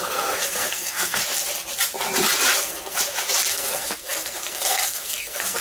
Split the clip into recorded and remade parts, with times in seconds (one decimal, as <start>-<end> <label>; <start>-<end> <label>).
0.0-1.2 remade; 1.2-2.6 recorded; 2.6-3.0 remade; 3.0-3.5 recorded; 3.5-5.6 remade